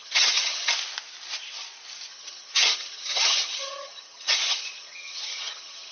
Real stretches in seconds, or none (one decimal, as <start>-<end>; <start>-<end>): 0.7-2.1